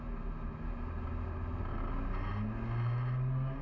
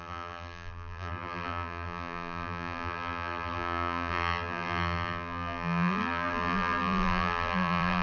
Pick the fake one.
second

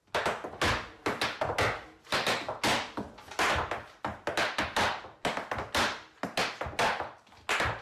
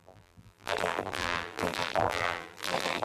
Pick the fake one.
second